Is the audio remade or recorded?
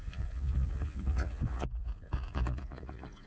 remade